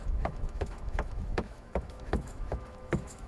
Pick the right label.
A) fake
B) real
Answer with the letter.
A